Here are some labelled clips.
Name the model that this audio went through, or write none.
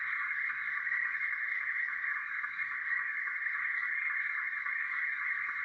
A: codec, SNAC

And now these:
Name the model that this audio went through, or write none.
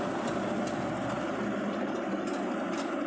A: none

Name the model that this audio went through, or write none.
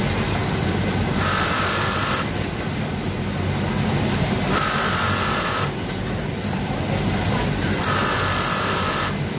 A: none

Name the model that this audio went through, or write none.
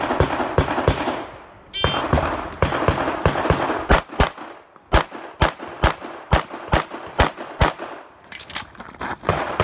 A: none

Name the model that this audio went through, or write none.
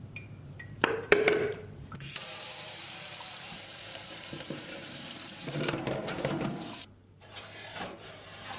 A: vocoder, BigVGAN v2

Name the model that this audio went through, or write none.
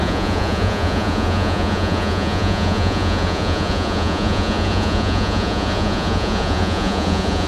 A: vocoder, Vocos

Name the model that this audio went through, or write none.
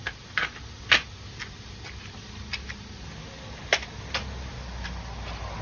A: none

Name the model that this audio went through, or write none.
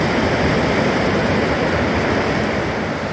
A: none